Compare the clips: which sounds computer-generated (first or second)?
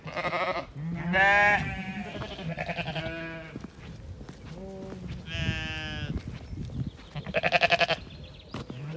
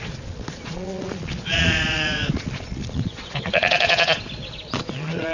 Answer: second